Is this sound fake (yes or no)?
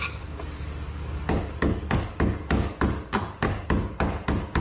yes